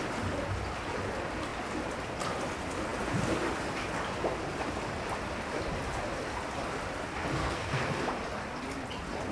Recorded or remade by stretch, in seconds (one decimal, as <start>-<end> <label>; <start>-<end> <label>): 0.0-7.4 recorded; 7.4-7.9 remade; 7.9-9.3 recorded